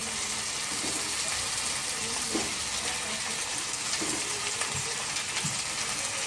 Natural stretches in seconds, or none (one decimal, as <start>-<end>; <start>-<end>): 0.0-1.8; 2.6-3.5; 5.0-6.3